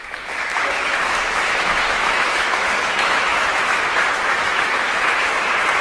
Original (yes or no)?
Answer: no